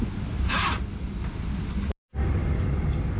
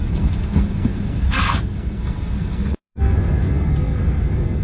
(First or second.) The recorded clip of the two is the first